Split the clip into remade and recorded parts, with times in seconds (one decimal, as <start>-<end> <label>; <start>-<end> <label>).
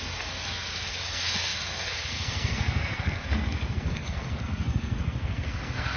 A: 0.0-6.0 remade